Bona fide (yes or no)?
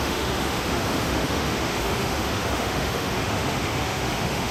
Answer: no